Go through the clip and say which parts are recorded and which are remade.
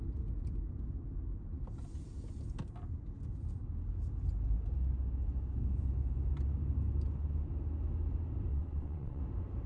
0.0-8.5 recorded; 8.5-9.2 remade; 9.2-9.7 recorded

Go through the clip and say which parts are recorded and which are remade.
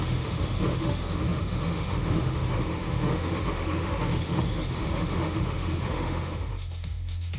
0.0-7.4 remade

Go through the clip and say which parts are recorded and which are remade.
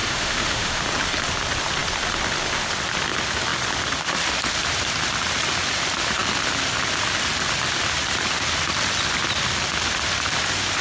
0.0-0.8 remade; 0.8-10.8 recorded